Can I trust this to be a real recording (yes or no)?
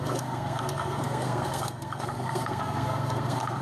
no